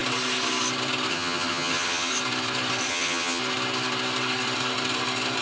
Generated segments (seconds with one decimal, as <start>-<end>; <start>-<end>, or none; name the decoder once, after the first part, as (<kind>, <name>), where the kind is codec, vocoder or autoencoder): 1.1-2.1 (vocoder, HiFi-GAN); 2.9-3.4